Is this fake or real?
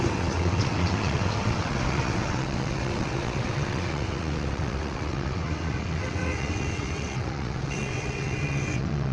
fake